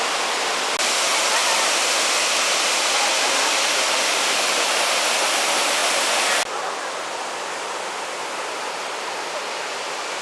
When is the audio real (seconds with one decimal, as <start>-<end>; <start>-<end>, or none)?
0.0-10.2